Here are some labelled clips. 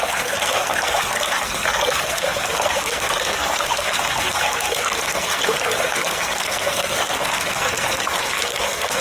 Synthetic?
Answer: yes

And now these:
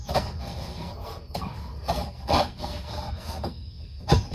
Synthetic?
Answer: yes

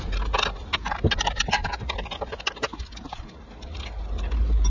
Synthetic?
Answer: no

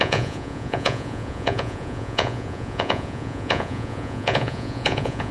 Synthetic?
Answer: yes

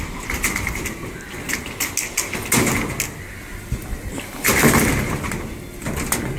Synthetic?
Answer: no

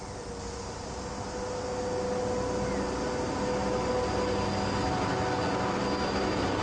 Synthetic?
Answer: no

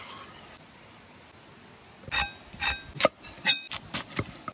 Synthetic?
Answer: no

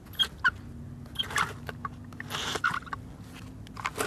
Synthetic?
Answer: no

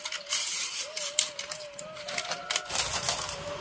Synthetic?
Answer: no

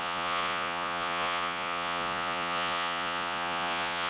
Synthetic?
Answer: yes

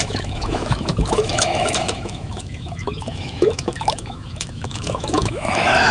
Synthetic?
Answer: yes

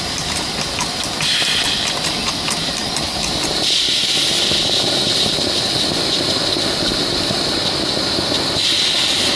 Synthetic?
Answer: no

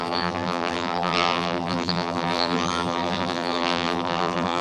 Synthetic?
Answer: yes